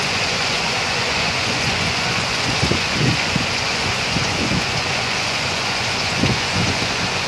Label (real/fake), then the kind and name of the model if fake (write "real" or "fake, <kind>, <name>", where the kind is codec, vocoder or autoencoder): fake, vocoder, Vocos